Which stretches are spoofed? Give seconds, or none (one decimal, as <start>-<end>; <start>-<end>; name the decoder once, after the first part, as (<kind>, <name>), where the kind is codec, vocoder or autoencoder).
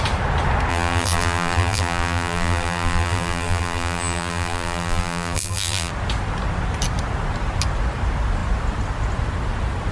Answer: 0.7-5.9 (vocoder, BigVGAN v2)